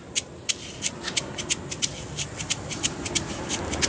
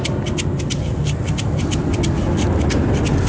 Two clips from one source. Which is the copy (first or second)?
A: first